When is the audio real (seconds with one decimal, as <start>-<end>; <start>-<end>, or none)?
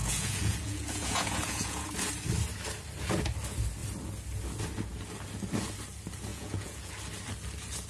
1.9-6.3; 6.9-7.9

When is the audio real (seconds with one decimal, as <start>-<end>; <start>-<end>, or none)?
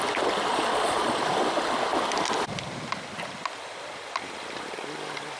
0.0-0.5; 1.2-5.4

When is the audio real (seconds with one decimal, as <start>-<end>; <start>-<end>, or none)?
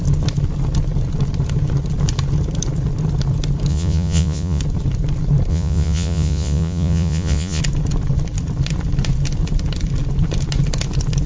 0.0-3.7; 4.6-5.5; 7.6-11.3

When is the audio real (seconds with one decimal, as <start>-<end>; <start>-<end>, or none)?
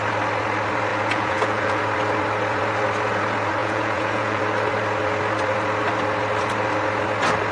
0.0-0.9; 1.8-3.6; 4.4-7.5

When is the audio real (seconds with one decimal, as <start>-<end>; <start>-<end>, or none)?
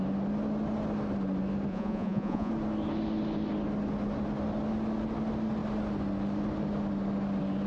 0.0-1.7; 2.5-7.7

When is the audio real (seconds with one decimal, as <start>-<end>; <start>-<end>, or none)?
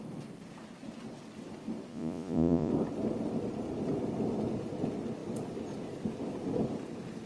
0.0-1.9; 2.7-7.3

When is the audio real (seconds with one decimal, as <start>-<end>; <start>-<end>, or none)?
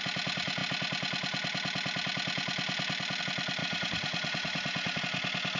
0.0-3.6; 5.0-5.6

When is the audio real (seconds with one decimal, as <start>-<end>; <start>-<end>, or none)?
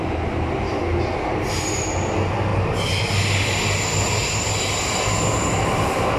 0.0-6.2